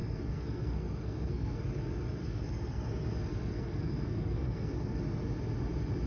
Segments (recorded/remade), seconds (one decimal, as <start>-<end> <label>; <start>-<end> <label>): 0.0-1.6 remade; 1.6-2.2 recorded; 2.2-2.9 remade; 2.9-3.3 recorded; 3.3-5.0 remade; 5.0-6.1 recorded